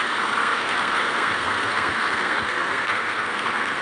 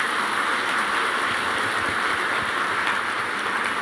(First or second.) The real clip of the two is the second